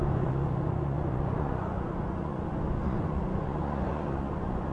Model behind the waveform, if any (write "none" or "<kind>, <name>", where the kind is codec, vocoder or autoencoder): vocoder, Vocos